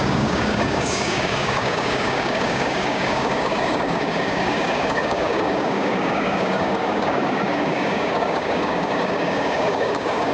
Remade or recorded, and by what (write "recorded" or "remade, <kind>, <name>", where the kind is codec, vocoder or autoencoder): remade, codec, DAC